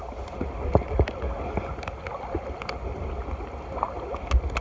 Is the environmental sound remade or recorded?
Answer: recorded